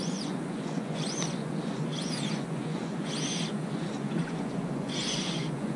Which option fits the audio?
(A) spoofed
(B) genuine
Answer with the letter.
A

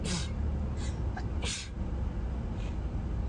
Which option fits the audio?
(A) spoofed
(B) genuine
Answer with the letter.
B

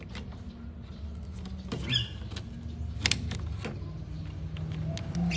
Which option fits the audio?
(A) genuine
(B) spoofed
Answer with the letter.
A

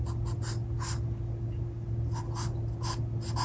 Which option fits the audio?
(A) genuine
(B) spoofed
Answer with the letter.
A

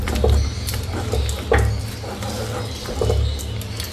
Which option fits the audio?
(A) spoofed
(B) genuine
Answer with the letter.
B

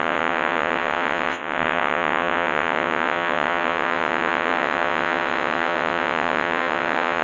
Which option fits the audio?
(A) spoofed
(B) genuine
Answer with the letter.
A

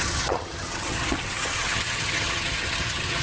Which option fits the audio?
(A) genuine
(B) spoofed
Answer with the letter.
B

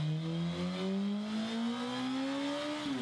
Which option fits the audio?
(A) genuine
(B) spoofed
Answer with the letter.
A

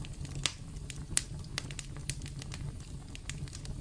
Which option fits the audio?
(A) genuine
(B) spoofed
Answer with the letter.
A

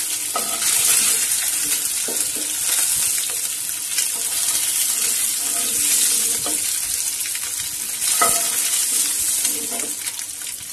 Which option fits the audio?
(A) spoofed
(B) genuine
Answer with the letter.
B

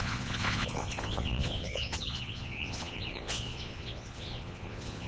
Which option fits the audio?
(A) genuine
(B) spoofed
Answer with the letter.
B